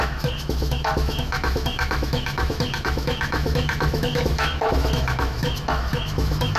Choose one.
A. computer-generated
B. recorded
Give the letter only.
A